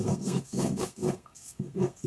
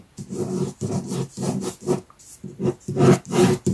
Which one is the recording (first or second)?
second